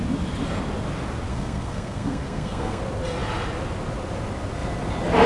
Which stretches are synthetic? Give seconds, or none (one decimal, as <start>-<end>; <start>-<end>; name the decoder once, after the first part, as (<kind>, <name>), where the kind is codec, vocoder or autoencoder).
1.3-2.8 (codec, SNAC)